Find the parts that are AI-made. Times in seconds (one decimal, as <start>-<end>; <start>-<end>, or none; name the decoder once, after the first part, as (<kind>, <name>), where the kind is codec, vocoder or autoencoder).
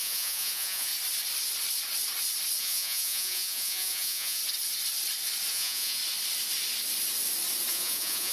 0.0-0.9 (vocoder, Vocos); 2.6-4.4; 5.5-6.0; 7.7-8.3